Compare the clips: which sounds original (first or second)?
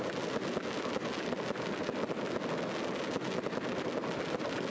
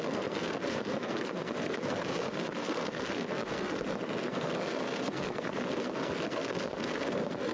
first